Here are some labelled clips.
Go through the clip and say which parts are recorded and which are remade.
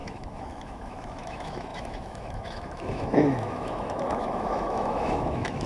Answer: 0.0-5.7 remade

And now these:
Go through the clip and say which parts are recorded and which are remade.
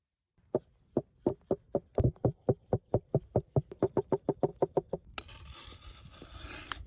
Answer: 0.0-6.9 recorded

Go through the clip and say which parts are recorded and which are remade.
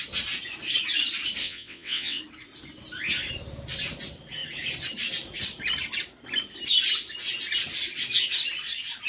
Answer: 0.0-1.4 recorded; 1.4-2.2 remade; 2.2-9.1 recorded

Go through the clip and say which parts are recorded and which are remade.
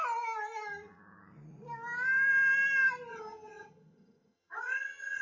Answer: 0.0-3.1 recorded; 3.1-5.2 remade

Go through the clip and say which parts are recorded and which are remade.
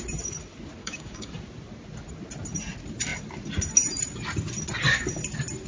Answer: 0.0-0.8 recorded; 0.8-1.3 remade; 1.3-5.7 recorded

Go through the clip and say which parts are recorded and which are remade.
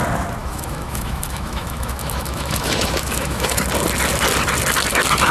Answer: 0.0-0.4 recorded; 0.4-3.6 remade; 3.6-5.3 recorded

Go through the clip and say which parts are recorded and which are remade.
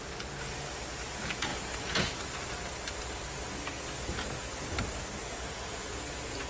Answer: 0.0-1.5 recorded; 1.5-2.1 remade; 2.1-5.2 recorded; 5.2-6.0 remade; 6.0-6.5 recorded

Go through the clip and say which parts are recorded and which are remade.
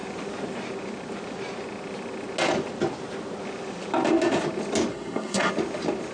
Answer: 0.0-4.9 recorded; 4.9-5.5 remade; 5.5-6.1 recorded